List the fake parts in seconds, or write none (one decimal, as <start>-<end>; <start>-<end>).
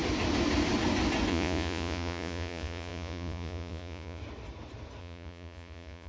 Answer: 1.3-4.2; 5.0-6.1